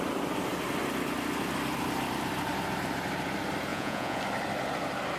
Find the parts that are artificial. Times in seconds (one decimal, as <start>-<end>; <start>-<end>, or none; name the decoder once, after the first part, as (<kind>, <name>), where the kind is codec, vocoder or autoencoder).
3.7-4.2 (vocoder, Vocos)